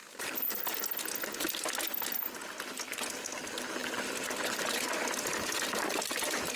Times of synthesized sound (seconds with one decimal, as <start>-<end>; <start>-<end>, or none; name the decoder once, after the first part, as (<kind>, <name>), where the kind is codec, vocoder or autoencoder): none